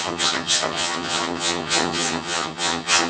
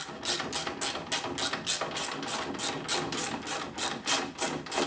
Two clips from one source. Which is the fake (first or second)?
first